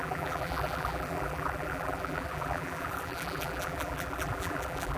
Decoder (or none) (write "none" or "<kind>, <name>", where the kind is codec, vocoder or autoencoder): vocoder, BigVGAN v2